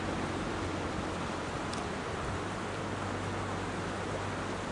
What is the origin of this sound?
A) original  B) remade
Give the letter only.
A